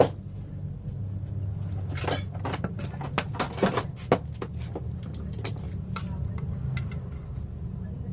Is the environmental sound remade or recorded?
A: recorded